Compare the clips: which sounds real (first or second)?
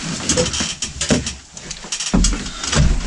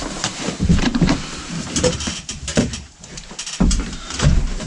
first